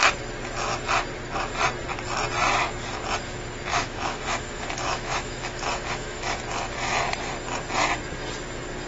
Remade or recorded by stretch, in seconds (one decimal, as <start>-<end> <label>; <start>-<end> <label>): 0.0-3.7 recorded; 3.7-6.4 remade; 6.4-8.9 recorded